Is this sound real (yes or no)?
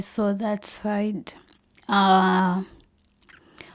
yes